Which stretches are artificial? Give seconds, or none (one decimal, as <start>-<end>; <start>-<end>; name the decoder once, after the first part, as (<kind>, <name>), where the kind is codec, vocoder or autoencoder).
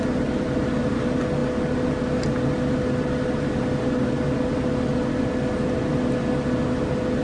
none